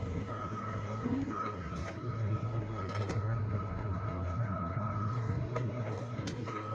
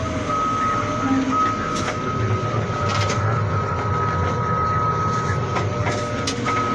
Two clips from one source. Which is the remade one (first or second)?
first